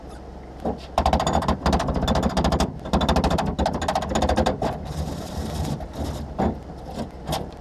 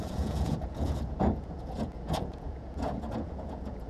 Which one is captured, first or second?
first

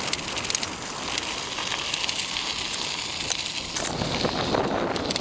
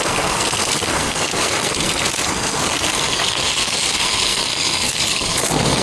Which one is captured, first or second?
first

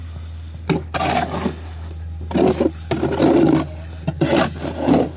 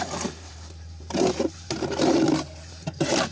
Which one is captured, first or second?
first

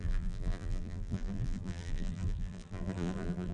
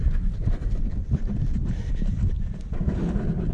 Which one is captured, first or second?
second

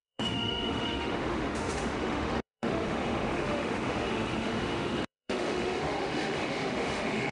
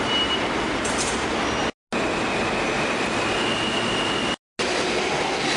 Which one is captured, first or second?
second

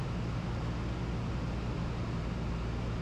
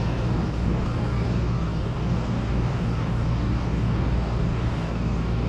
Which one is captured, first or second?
first